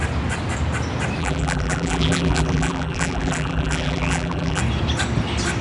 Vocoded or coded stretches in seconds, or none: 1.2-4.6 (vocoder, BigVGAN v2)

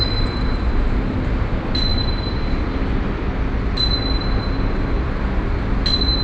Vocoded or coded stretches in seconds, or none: none

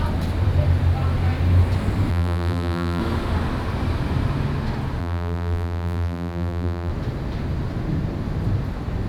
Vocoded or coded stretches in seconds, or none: 2.1-3.0 (vocoder, BigVGAN v2); 5.0-6.9

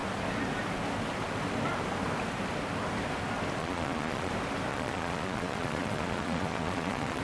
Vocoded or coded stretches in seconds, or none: 3.6-4.3 (vocoder, Vocos); 4.7-7.2

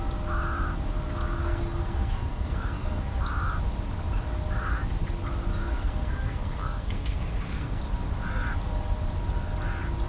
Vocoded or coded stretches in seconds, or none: 1.4-3.2 (codec, SNAC); 5.6-7.8

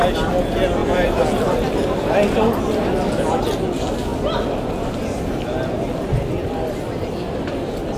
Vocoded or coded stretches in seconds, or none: 0.8-2.4 (vocoder, BigVGAN v2); 4.1-4.9

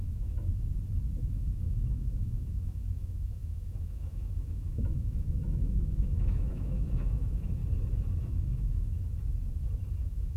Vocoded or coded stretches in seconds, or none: 0.0-0.5 (autoencoder, DAC-VAE); 1.2-7.6; 8.2-8.9; 10.0-10.4